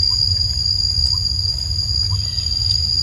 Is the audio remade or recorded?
recorded